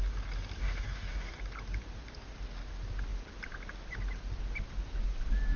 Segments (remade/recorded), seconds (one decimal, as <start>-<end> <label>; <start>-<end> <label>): 0.0-0.6 recorded; 0.6-1.4 remade; 1.4-5.6 recorded